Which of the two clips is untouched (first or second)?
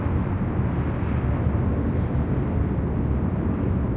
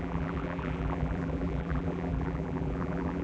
first